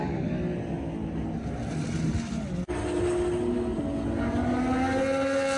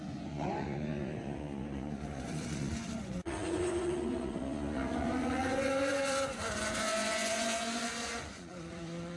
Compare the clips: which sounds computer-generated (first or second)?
second